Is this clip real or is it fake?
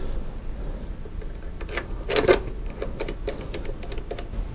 real